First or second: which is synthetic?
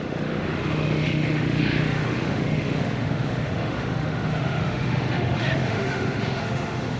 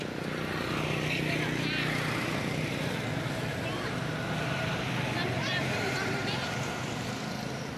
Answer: first